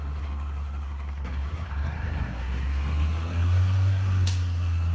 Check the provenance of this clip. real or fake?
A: fake